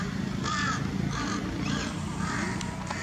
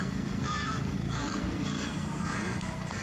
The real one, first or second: first